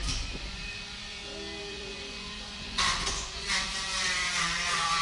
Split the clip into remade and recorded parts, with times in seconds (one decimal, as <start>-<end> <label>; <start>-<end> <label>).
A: 0.0-1.2 remade; 1.2-1.7 recorded; 1.7-5.0 remade